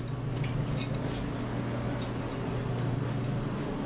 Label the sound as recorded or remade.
recorded